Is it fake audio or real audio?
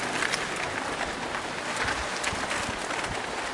real